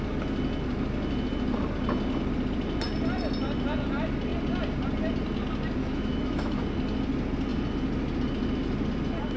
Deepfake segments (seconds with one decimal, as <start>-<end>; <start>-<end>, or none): 5.8-6.6